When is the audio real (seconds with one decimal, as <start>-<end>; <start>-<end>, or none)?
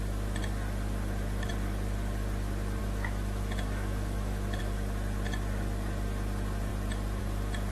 0.0-2.8; 4.6-7.7